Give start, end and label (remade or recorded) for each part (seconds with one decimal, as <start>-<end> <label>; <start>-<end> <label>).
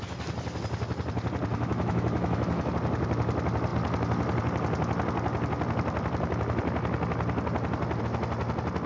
0.0-1.5 recorded; 1.5-2.7 remade; 2.7-8.9 recorded